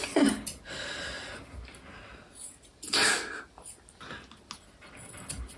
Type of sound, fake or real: real